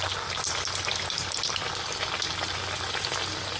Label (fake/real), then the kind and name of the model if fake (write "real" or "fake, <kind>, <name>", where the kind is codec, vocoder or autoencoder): real